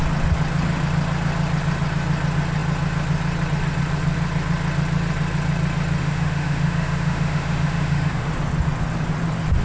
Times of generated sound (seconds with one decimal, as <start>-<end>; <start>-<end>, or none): 6.0-8.3